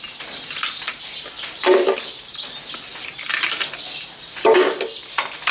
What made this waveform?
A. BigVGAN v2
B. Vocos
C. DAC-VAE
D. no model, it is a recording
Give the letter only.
D